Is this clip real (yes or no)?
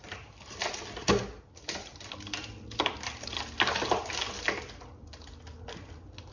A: yes